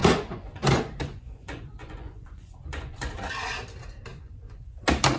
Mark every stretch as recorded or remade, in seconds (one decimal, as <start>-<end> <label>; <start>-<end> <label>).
0.0-3.1 remade; 3.1-4.1 recorded; 4.1-4.8 remade; 4.8-5.2 recorded